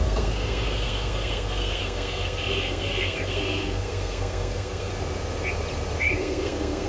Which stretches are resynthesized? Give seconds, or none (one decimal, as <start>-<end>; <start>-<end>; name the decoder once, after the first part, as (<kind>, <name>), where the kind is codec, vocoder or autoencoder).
0.0-4.9 (codec, SNAC); 6.0-6.9